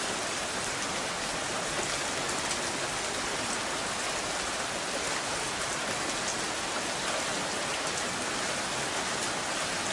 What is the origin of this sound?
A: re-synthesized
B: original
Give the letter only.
B